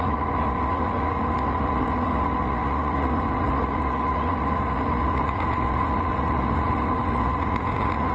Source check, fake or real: fake